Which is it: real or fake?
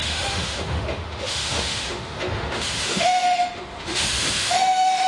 fake